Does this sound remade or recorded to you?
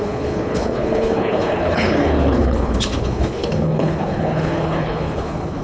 remade